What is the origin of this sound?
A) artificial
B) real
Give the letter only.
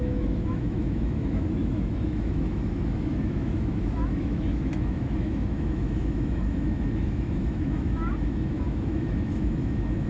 A